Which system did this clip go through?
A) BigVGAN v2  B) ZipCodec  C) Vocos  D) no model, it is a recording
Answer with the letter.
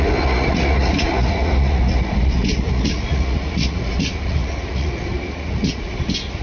C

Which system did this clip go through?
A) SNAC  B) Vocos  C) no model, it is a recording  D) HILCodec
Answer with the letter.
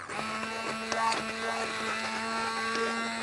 C